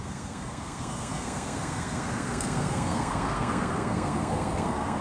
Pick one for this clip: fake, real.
fake